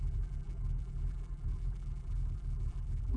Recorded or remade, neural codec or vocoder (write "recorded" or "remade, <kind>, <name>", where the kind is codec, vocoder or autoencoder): remade, vocoder, BigVGAN v2